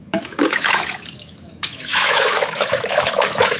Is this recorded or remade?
remade